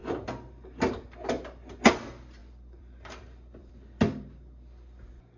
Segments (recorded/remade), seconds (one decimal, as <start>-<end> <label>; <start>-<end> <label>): 0.0-2.4 recorded; 2.4-3.7 remade; 3.7-5.4 recorded